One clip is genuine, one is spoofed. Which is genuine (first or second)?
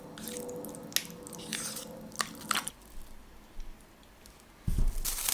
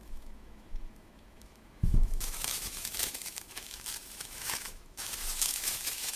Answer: first